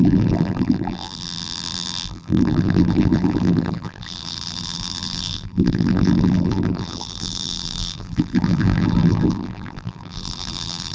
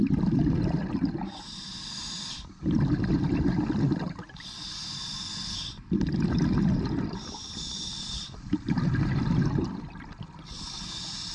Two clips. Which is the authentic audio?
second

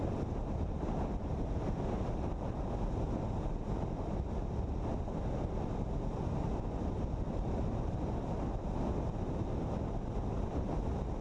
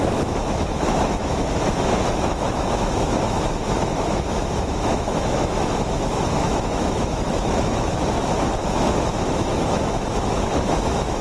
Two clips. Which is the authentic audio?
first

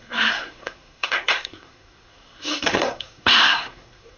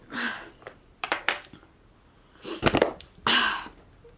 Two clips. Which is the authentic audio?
second